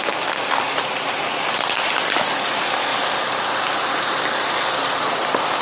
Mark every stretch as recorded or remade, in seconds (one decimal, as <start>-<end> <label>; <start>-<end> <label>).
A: 0.0-5.6 recorded